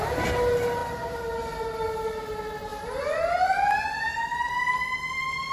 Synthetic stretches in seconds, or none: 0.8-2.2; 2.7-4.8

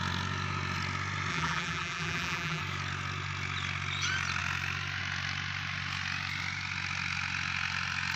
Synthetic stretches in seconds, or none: 1.3-2.6

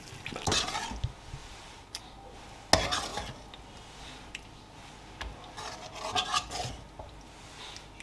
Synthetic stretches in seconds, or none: 1.4-2.0

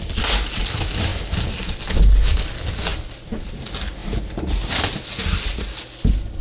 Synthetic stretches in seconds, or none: 1.1-1.8; 2.9-3.6

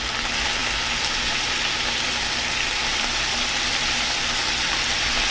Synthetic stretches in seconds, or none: 0.0-5.3